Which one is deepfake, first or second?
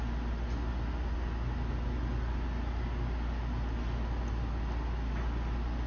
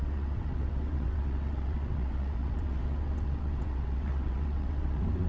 second